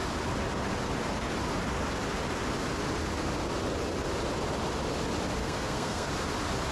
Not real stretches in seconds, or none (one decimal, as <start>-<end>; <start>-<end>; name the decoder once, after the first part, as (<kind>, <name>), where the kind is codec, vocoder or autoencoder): 5.4-6.1 (codec, SNAC)